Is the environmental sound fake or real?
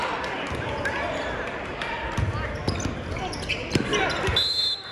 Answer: real